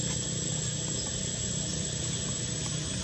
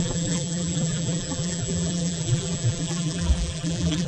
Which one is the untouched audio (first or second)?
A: first